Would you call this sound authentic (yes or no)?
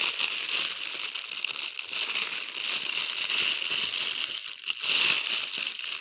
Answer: yes